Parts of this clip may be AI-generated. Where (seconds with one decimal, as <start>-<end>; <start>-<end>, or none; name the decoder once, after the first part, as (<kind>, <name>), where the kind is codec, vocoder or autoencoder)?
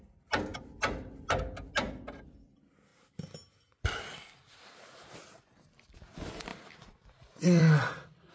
2.9-3.8 (vocoder, BigVGAN v2); 6.5-8.3